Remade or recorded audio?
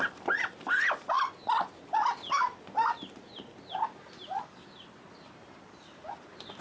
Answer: recorded